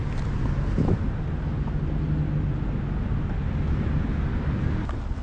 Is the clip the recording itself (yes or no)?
yes